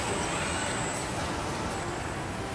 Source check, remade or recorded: recorded